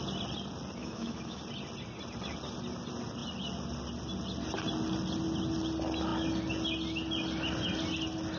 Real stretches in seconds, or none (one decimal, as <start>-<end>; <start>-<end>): 0.0-0.8; 1.4-8.4